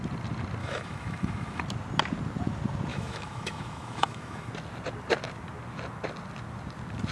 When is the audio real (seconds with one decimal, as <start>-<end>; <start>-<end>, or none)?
0.0-0.6; 1.6-2.9; 4.5-7.1